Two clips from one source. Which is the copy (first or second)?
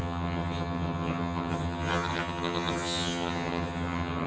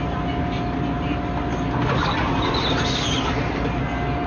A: first